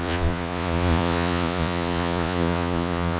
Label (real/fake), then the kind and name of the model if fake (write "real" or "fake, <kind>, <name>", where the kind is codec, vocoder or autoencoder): fake, vocoder, Vocos